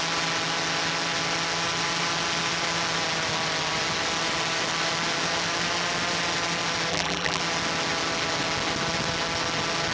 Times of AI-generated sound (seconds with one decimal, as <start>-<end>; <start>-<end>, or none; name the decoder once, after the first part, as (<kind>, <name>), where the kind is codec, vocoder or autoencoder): 6.9-7.4 (vocoder, BigVGAN v2)